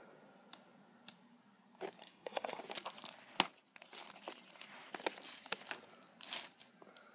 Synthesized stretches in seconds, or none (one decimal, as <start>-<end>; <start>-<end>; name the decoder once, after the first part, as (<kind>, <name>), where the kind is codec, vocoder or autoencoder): 2.0-2.6 (codec, SNAC)